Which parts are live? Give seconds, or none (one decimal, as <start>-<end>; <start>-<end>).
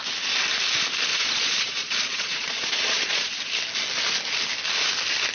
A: 0.0-1.1; 3.3-5.3